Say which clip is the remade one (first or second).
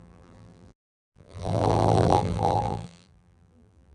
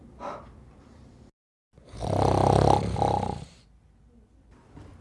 first